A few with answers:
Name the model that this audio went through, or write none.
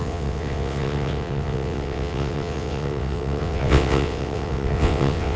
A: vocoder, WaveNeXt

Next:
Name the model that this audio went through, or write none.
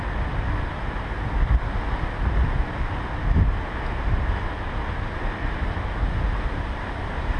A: none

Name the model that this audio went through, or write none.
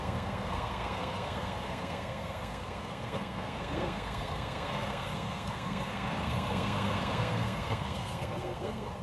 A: codec, SNAC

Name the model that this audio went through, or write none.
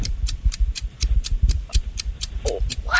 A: vocoder, BigVGAN v2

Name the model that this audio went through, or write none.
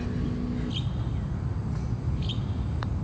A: none